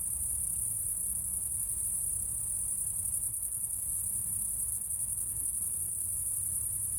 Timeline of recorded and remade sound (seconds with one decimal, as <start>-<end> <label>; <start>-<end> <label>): 0.0-0.9 recorded; 0.9-1.8 remade; 1.8-3.3 recorded; 3.3-4.0 remade; 4.0-4.7 recorded; 4.7-6.3 remade; 6.3-7.0 recorded